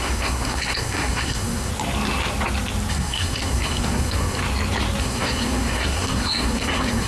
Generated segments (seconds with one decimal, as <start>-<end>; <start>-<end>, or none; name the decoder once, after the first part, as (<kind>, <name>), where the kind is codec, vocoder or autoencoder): 0.0-1.7 (codec, SNAC); 2.9-4.4; 5.0-7.1